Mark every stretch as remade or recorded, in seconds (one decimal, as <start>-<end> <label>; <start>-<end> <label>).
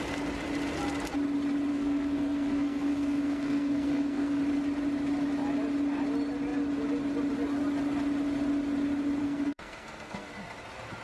0.0-1.7 recorded; 1.7-4.4 remade; 4.4-9.2 recorded; 9.2-10.3 remade; 10.3-11.0 recorded